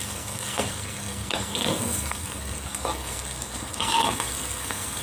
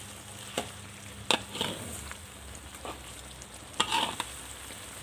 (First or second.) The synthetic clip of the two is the first